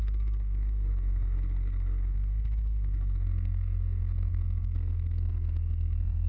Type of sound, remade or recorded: remade